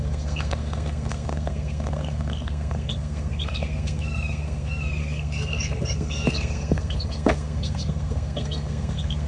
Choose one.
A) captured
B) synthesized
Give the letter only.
B